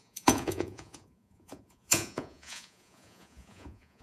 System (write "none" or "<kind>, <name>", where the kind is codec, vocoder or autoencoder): vocoder, Vocos